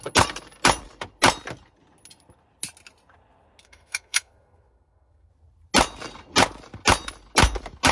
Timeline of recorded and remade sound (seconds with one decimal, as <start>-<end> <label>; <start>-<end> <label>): 0.0-3.6 recorded; 3.6-5.3 remade; 5.3-7.9 recorded